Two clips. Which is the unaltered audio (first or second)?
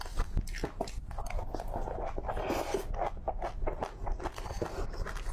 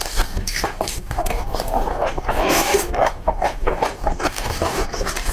first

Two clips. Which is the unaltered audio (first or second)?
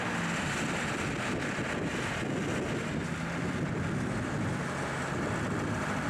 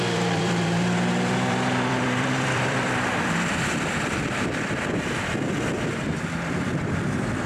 first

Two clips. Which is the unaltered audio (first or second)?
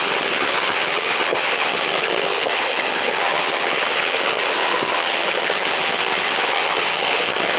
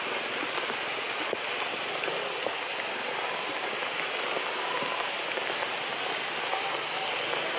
second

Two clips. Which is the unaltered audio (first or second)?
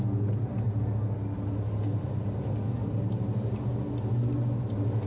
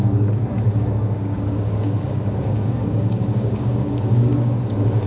first